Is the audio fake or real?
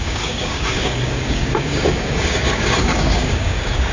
fake